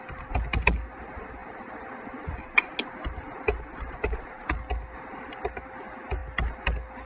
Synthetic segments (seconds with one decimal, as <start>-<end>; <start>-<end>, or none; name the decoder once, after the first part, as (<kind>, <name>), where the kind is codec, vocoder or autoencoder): none